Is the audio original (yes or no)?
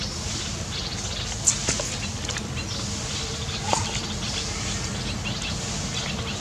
yes